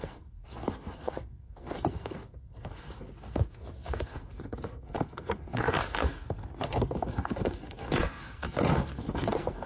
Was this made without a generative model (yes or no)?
no